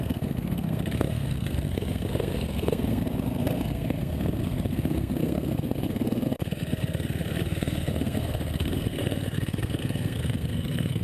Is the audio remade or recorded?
remade